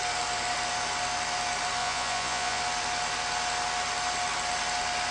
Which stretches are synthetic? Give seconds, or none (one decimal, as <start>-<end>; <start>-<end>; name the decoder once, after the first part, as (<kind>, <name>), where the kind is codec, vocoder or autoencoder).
1.8-2.6 (vocoder, Vocos)